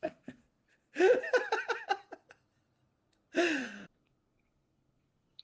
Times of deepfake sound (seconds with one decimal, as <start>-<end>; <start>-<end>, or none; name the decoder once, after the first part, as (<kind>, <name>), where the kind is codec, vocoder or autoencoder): 0.0-0.4 (codec, SNAC); 3.6-5.4